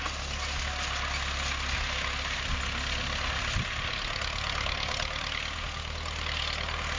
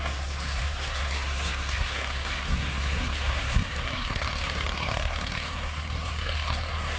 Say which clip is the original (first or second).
first